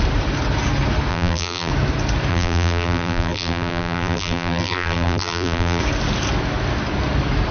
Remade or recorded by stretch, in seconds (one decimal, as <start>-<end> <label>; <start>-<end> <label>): 0.0-1.1 recorded; 1.1-1.7 remade; 1.7-2.3 recorded; 2.3-5.8 remade; 5.8-7.5 recorded